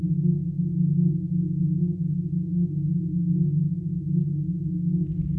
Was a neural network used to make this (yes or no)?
no